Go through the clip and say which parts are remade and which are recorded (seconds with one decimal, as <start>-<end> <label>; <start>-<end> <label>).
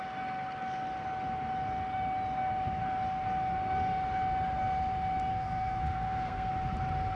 0.0-5.3 recorded; 5.3-6.5 remade; 6.5-7.2 recorded